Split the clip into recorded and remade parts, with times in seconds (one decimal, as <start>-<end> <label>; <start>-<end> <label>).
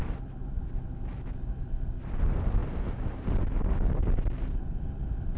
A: 0.0-2.6 remade; 2.6-3.4 recorded; 3.4-5.4 remade